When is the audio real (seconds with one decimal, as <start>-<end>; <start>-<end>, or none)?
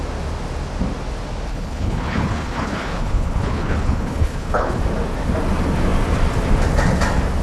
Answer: 0.0-1.5; 4.8-7.4